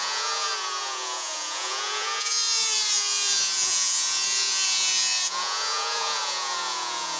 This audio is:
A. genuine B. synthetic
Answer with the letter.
B